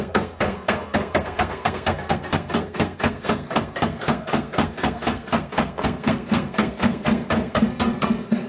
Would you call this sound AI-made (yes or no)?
yes